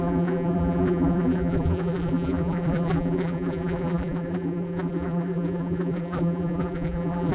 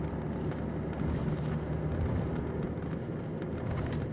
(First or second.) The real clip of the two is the second